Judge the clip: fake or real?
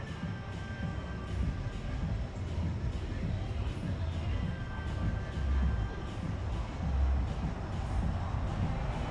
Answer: real